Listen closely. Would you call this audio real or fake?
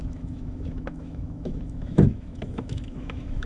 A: fake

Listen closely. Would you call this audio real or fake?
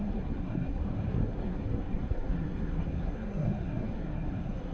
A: fake